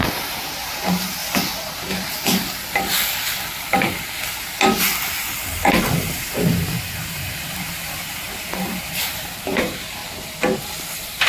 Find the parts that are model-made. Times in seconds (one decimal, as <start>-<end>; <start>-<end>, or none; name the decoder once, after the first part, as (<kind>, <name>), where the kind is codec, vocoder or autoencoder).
0.0-1.2 (vocoder, BigVGAN v2); 5.8-10.0; 10.9-11.3